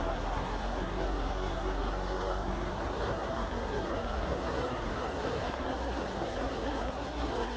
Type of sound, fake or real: fake